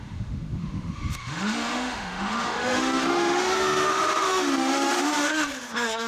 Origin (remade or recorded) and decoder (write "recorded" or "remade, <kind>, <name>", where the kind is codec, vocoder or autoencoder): remade, autoencoder, DAC-VAE